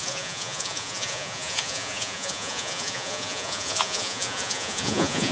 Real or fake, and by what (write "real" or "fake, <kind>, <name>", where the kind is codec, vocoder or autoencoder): fake, vocoder, Vocos